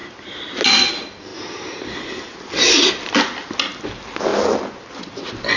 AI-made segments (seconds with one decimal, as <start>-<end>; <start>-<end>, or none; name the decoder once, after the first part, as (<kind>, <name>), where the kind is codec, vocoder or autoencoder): none